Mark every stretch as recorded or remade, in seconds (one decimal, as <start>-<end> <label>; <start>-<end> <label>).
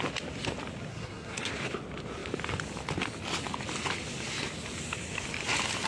0.0-0.9 recorded; 0.9-1.5 remade; 1.5-5.9 recorded